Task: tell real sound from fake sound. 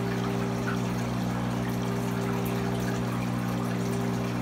real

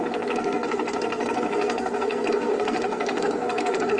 fake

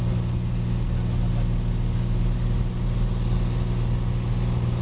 real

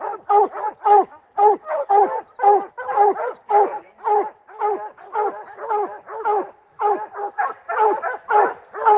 real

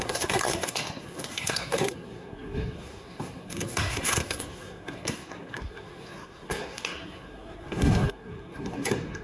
fake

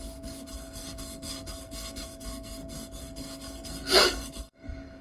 fake